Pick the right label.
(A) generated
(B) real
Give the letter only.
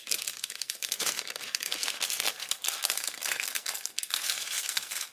A